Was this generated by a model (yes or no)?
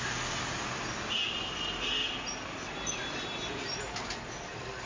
no